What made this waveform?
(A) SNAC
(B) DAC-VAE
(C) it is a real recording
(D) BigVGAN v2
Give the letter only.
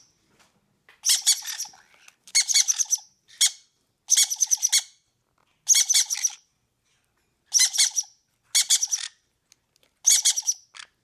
C